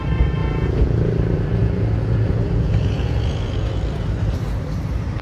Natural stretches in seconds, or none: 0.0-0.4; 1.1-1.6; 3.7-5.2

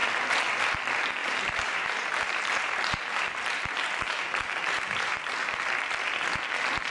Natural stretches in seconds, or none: 0.0-1.2; 5.2-6.9

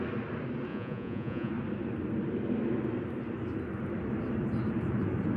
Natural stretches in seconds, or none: 0.0-0.7; 1.5-5.4

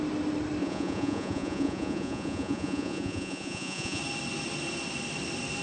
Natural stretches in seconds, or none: 0.0-0.6; 4.0-5.6

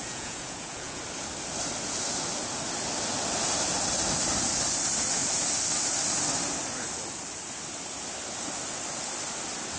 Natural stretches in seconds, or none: 1.0-9.8

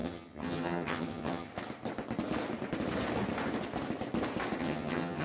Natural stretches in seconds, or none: 1.5-4.6

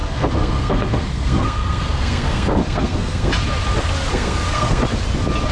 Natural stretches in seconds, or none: 3.3-4.1; 4.8-5.5

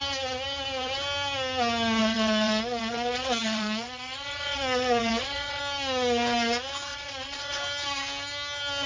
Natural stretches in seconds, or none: 0.0-2.0; 5.6-6.9; 7.6-8.9